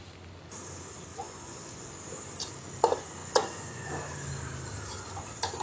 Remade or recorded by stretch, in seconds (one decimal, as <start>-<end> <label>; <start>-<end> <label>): 0.0-1.1 recorded; 1.1-1.9 remade; 1.9-3.2 recorded; 3.2-3.9 remade; 3.9-5.6 recorded